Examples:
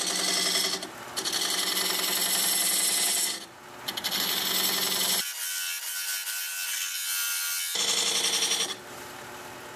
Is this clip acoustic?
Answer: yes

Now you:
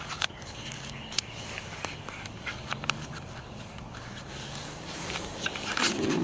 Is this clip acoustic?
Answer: no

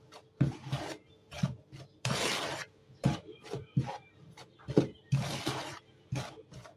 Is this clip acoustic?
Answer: no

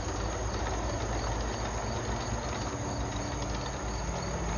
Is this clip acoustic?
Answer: yes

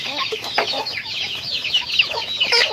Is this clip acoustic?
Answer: no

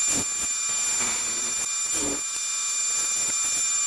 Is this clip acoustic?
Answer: yes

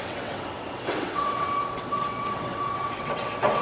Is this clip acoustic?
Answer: no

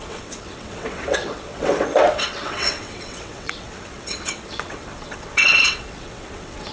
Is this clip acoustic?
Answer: no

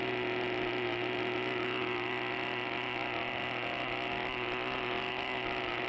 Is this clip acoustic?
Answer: yes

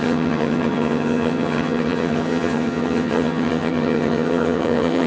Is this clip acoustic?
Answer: no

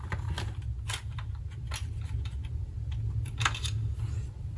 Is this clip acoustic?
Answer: yes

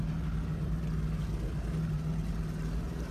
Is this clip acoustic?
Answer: yes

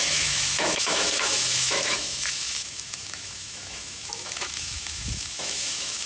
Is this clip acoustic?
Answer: no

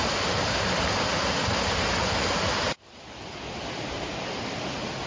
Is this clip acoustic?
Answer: yes